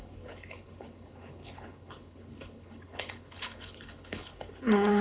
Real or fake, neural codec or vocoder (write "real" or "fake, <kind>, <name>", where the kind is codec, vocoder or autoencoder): fake, codec, HILCodec